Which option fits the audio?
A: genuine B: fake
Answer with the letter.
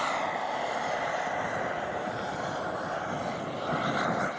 A